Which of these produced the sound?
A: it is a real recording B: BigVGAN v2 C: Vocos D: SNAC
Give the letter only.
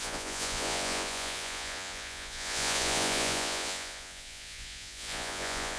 C